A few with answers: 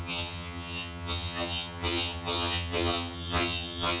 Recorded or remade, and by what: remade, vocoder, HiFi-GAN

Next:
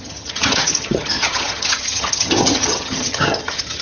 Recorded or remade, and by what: remade, vocoder, HiFi-GAN